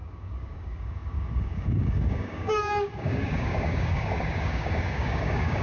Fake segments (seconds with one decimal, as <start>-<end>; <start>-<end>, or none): 0.0-5.6